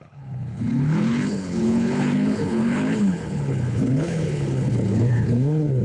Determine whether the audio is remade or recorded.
remade